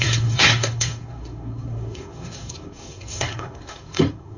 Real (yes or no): no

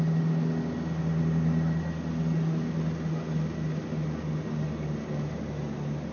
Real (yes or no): yes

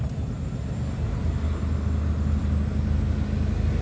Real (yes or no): yes